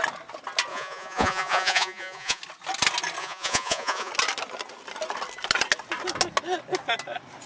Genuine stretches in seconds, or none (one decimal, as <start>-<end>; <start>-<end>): 0.0-0.7; 2.4-3.2; 4.1-7.5